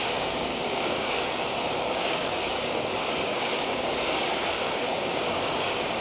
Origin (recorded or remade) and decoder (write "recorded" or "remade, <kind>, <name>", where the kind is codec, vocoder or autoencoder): remade, codec, DAC